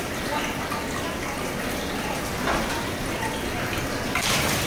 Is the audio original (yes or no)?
yes